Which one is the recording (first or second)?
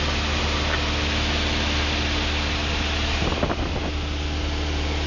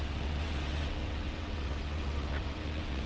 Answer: first